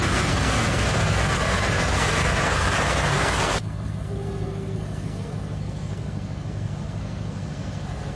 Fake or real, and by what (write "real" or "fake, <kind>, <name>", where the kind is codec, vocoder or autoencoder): fake, codec, SNAC